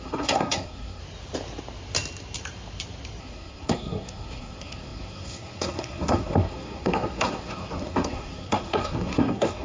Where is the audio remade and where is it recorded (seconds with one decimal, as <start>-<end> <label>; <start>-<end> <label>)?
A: 0.0-1.0 remade; 1.0-3.2 recorded; 3.2-9.6 remade